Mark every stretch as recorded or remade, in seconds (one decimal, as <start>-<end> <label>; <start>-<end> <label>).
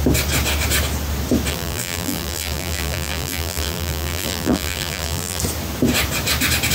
0.0-1.5 recorded; 1.5-5.4 remade; 5.4-6.7 recorded